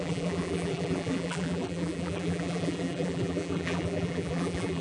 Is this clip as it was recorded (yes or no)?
no